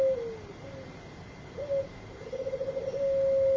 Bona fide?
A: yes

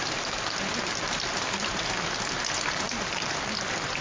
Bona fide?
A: yes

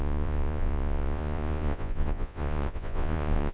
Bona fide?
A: no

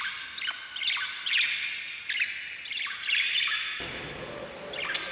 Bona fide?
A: yes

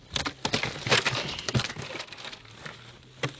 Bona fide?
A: yes